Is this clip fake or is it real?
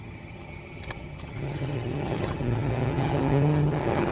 fake